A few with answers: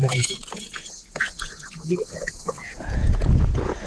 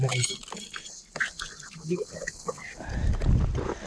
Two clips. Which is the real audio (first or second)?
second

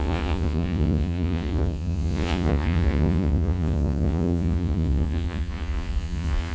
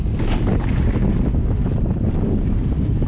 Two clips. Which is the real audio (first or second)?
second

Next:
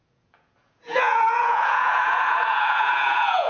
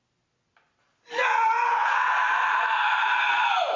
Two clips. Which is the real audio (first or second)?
second